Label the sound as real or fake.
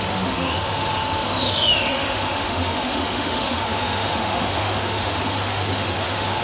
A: fake